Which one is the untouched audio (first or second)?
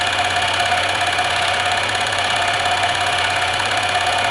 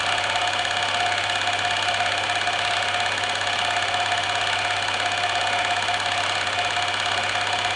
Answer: second